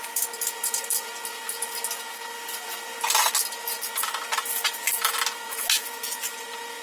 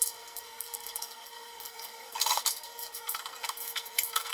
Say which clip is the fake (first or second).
second